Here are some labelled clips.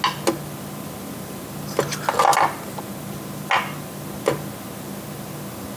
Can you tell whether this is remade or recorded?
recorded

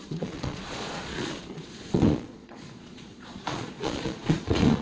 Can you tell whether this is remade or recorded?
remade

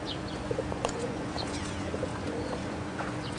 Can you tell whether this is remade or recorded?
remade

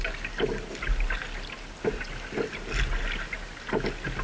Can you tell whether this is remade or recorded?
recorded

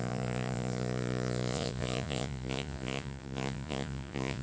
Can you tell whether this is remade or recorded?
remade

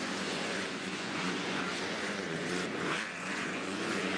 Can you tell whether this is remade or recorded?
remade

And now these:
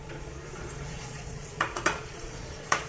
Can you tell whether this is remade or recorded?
remade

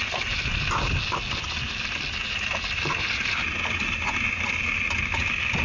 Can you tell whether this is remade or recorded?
recorded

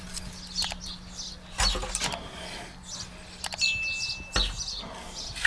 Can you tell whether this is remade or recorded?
recorded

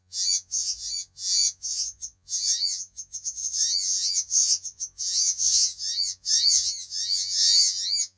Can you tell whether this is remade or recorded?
remade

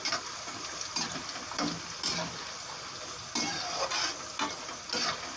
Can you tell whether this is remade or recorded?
recorded